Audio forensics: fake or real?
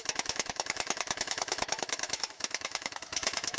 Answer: fake